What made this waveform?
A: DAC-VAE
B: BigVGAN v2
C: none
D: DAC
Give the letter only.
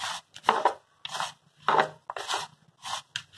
C